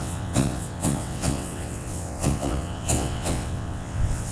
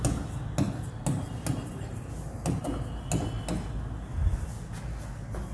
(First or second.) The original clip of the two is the second